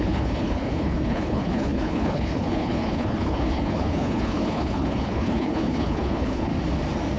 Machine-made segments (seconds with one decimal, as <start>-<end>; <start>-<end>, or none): 0.0-6.5